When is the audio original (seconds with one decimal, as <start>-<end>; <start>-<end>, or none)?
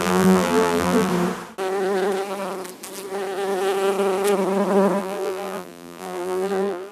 1.1-5.0